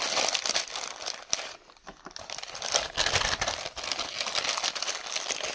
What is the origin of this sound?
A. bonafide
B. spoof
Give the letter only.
A